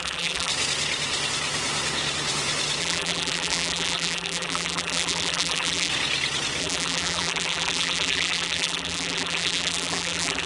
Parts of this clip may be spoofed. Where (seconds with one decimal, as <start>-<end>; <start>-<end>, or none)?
0.0-0.5; 2.8-5.9; 6.6-10.5